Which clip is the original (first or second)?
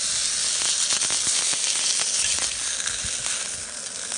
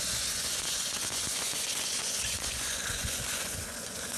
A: first